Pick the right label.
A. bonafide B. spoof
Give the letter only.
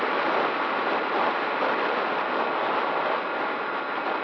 A